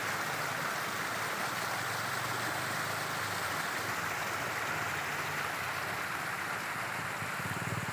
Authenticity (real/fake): real